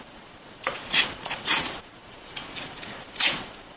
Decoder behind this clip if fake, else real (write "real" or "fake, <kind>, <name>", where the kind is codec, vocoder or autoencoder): fake, vocoder, Vocos